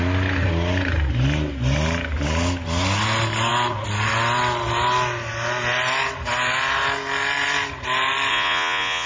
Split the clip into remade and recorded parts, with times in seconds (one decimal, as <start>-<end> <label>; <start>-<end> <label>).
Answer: 0.0-8.3 recorded; 8.3-9.1 remade